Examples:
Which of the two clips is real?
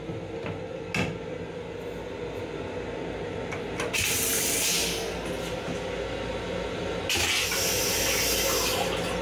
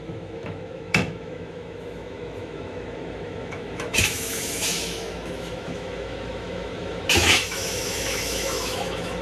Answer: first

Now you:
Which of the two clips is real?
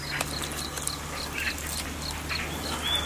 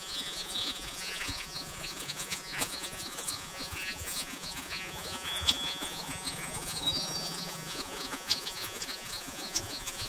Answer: first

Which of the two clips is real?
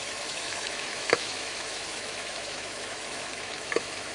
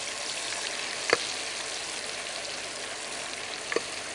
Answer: second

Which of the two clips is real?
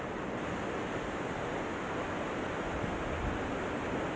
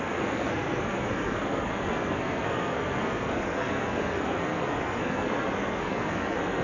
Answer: first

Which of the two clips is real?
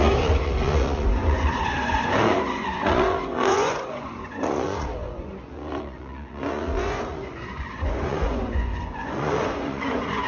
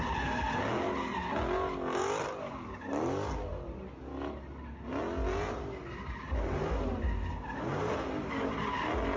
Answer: second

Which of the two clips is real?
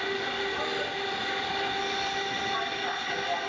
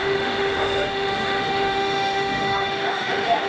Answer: first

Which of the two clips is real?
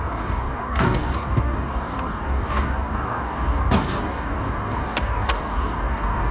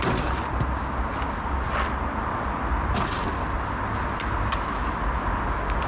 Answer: second